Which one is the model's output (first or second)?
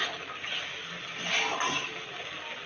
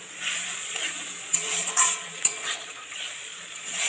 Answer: second